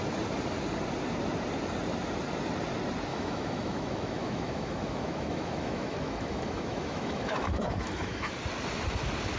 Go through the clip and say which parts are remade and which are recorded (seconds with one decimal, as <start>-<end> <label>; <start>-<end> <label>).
0.0-3.1 recorded; 3.1-8.3 remade; 8.3-9.4 recorded

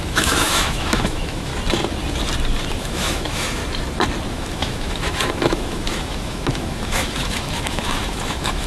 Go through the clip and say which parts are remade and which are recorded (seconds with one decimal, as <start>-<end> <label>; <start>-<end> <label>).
0.0-1.5 remade; 1.5-2.7 recorded; 2.7-3.6 remade; 3.6-4.3 recorded; 4.3-8.7 remade

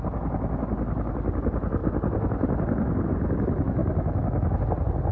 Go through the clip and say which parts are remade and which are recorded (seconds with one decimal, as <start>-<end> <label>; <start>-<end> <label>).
0.0-3.8 recorded; 3.8-4.6 remade; 4.6-5.1 recorded

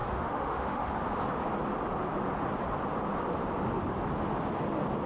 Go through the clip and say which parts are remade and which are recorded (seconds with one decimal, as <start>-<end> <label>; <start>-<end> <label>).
0.0-0.9 remade; 0.9-5.1 recorded

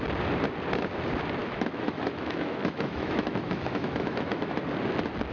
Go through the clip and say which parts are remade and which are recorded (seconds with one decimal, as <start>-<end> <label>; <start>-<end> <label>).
0.0-1.4 recorded; 1.4-4.6 remade; 4.6-5.3 recorded

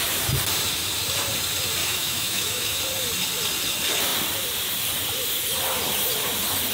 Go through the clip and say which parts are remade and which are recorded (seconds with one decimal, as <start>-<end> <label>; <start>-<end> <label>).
0.0-1.8 recorded; 1.8-2.8 remade; 2.8-6.7 recorded

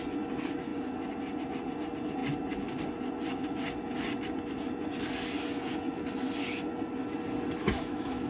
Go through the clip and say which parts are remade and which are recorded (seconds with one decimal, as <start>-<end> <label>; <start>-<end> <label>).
0.0-7.6 recorded; 7.6-8.3 remade